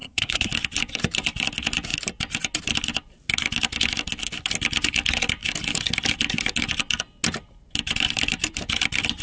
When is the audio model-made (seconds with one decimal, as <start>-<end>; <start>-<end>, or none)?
0.0-0.5